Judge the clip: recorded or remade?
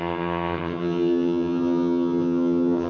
remade